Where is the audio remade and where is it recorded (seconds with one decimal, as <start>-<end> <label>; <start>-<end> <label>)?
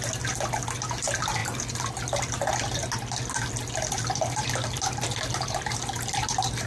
0.0-6.7 recorded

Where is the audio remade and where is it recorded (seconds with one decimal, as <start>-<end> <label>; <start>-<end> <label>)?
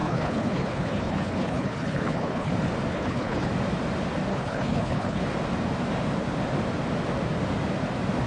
0.0-2.5 remade; 2.5-2.9 recorded; 2.9-3.5 remade; 3.5-4.3 recorded; 4.3-5.2 remade; 5.2-8.3 recorded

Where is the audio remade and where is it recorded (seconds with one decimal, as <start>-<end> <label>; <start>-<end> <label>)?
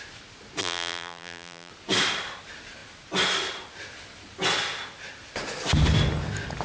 0.0-0.6 recorded; 0.6-1.7 remade; 1.7-6.6 recorded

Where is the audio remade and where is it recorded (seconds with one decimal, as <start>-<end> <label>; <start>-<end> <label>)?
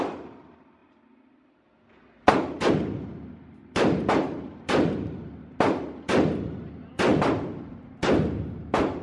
0.0-7.1 remade; 7.1-9.0 recorded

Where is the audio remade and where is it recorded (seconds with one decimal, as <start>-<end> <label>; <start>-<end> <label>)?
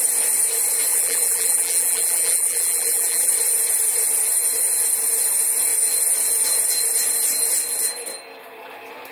0.0-0.9 recorded; 0.9-3.3 remade; 3.3-9.1 recorded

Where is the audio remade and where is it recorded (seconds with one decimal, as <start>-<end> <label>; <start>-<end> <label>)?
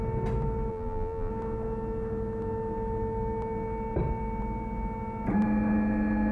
0.0-0.7 recorded; 0.7-1.3 remade; 1.3-6.3 recorded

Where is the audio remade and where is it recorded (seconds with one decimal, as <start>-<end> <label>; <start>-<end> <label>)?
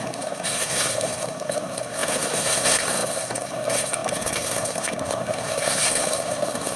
0.0-6.8 remade